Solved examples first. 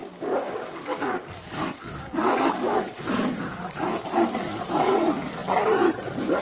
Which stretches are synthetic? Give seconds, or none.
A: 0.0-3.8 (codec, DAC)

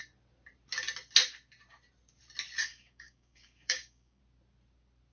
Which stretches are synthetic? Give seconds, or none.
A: 2.7-4.2 (codec, DAC)

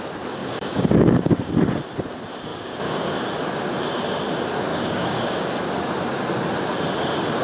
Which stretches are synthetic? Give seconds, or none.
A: 0.4-1.5 (codec, DAC); 2.5-3.2; 4.7-5.4

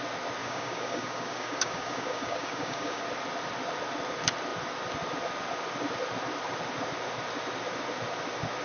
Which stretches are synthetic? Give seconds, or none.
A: 0.4-3.0 (codec, DAC)